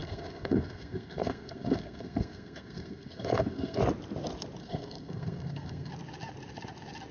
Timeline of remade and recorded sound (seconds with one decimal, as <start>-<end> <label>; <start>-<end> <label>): 0.0-3.8 remade; 3.8-4.6 recorded; 4.6-5.9 remade; 5.9-7.1 recorded